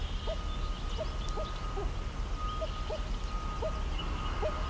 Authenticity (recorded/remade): recorded